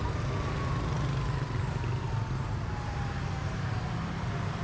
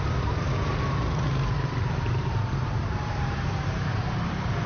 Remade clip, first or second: second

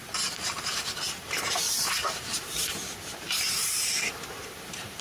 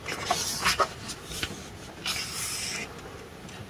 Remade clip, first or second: first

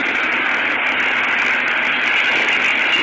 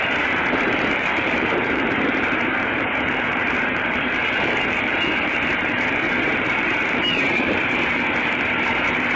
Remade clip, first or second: second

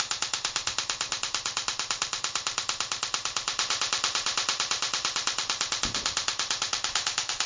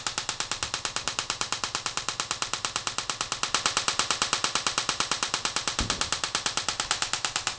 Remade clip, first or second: first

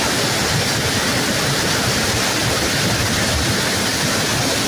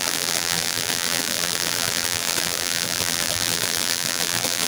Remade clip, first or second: second